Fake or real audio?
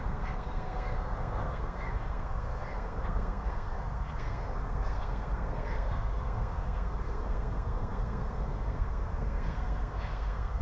fake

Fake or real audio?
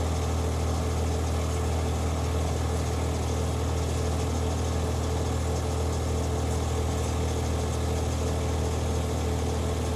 real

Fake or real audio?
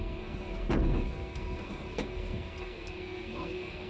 fake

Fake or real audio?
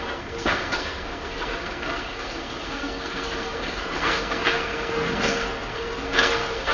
fake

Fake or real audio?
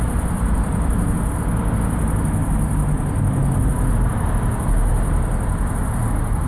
real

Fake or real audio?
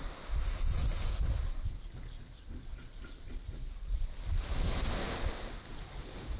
real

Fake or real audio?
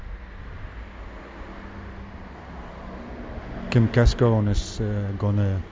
real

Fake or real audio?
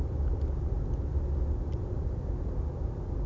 real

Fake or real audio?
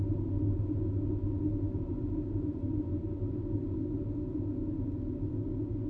real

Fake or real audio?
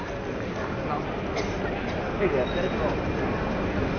real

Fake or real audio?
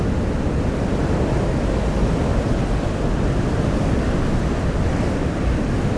real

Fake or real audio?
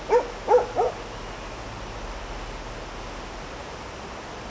real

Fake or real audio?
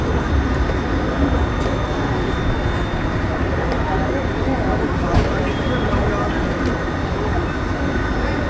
real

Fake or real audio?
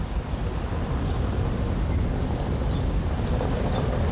real